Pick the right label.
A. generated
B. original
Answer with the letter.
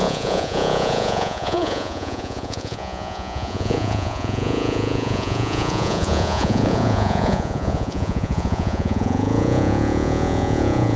A